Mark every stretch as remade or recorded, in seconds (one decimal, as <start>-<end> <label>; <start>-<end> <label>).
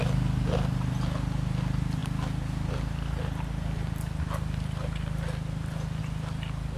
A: 0.0-6.8 recorded